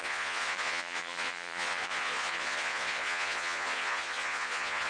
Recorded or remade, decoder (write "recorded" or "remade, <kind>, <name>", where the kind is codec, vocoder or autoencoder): remade, vocoder, Vocos